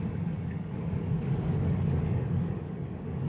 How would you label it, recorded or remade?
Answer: remade